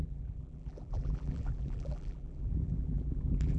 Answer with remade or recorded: remade